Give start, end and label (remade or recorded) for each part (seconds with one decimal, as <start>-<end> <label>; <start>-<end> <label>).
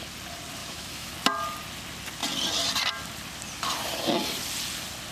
0.0-0.6 recorded; 0.6-1.1 remade; 1.1-5.1 recorded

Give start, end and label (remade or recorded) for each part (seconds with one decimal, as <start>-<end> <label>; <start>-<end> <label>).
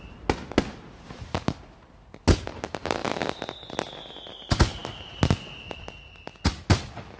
0.0-7.2 recorded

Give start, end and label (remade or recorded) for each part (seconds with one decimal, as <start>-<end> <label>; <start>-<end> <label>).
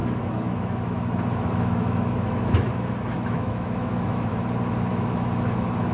0.0-4.3 remade; 4.3-4.9 recorded; 4.9-5.9 remade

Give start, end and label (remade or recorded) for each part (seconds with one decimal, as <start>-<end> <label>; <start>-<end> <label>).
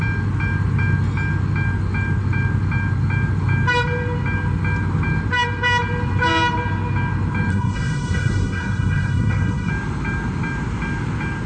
0.0-7.5 recorded; 7.5-9.7 remade; 9.7-11.5 recorded